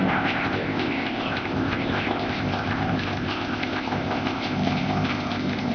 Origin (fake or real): fake